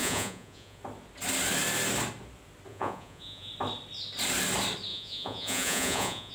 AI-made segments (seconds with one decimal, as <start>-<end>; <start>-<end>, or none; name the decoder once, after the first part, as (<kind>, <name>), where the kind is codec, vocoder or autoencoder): 0.0-0.8 (vocoder, Vocos); 2.7-3.5; 4.9-6.3

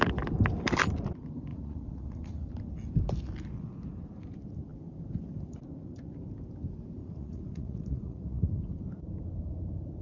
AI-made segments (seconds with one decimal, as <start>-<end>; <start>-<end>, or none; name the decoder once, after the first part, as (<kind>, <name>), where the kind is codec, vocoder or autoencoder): 1.5-2.5 (vocoder, Vocos); 7.0-8.6

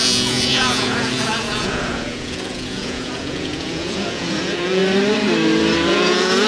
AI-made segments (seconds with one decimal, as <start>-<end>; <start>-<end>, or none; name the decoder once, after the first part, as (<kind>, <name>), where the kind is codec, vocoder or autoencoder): 0.0-4.8 (vocoder, Vocos); 5.9-6.5

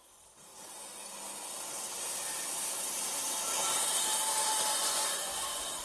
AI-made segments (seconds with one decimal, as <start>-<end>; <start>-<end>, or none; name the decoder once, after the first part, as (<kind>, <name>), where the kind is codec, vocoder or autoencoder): 4.7-5.8 (vocoder, Vocos)